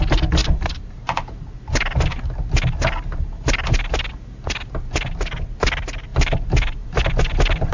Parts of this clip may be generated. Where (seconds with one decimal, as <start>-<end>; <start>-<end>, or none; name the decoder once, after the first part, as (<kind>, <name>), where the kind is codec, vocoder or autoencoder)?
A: 0.4-1.3 (vocoder, BigVGAN v2); 6.1-7.0

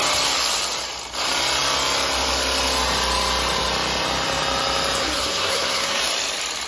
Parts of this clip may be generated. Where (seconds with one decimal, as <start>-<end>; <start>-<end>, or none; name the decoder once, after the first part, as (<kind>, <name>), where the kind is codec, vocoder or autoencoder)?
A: 5.0-6.0 (codec, SNAC)

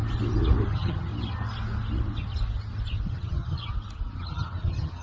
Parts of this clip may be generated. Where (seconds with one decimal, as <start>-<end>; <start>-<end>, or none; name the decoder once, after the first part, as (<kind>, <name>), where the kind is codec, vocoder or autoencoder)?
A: 0.7-1.1 (vocoder, HiFi-GAN); 3.1-3.7; 4.2-5.0

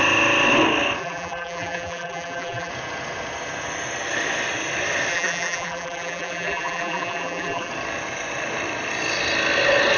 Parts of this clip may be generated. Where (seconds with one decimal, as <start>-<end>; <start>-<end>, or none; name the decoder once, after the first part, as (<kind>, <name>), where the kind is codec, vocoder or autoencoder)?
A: 1.0-2.7 (vocoder, BigVGAN v2); 5.1-7.7

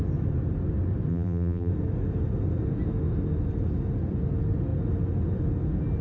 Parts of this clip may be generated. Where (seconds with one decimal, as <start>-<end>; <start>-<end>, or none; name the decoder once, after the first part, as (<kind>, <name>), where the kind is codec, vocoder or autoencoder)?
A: 1.1-1.7 (vocoder, BigVGAN v2)

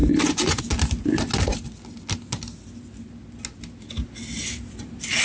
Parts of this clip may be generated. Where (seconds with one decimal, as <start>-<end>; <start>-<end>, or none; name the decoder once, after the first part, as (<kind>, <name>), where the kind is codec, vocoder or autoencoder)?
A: none